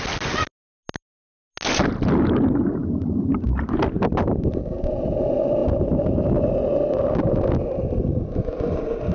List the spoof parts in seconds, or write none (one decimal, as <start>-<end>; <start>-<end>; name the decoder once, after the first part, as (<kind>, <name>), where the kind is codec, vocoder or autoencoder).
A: none

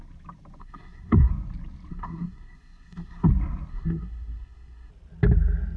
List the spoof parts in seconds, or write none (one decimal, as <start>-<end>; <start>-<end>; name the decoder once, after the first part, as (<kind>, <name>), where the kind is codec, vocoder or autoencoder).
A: 0.6-1.3 (codec, SNAC); 1.9-3.3; 3.7-4.9

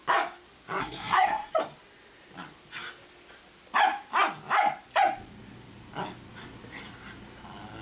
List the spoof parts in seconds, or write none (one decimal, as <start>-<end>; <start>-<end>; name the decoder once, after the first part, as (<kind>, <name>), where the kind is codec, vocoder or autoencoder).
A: 0.8-1.5 (codec, SNAC)

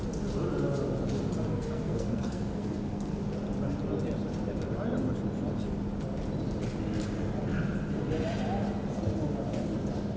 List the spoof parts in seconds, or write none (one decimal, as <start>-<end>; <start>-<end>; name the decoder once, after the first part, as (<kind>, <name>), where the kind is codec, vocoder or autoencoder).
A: 1.5-3.2 (codec, SNAC)

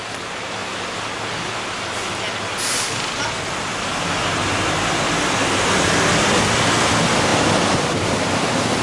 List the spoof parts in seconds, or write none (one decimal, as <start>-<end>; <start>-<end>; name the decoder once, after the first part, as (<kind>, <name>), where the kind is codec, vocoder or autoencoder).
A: none